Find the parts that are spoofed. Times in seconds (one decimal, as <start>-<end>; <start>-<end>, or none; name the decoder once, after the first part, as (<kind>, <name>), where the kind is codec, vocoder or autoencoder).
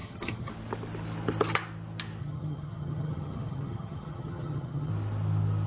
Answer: 0.0-0.5 (vocoder, HiFi-GAN); 2.2-4.9